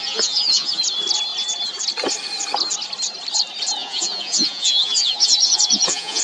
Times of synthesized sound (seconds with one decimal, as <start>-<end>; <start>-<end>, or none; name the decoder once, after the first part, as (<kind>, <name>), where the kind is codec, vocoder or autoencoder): 0.0-0.8 (vocoder, Vocos); 3.8-6.2